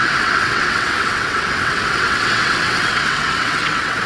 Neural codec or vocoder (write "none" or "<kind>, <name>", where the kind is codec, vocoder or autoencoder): vocoder, WaveNeXt